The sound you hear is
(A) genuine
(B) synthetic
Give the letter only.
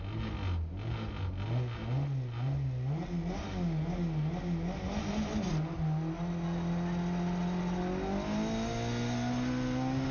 A